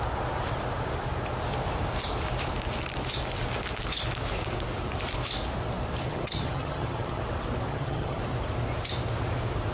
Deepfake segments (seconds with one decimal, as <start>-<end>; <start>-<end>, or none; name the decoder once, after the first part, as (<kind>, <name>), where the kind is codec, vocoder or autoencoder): 6.1-7.2 (vocoder, HiFi-GAN); 7.7-8.2